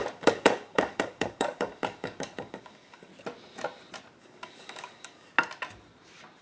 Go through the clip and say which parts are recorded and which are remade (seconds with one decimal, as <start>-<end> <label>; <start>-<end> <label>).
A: 0.0-3.1 remade; 3.1-4.2 recorded; 4.2-5.3 remade; 5.3-6.4 recorded